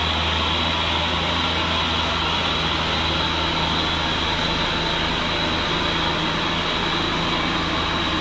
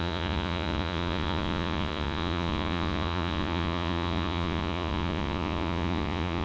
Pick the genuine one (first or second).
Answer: first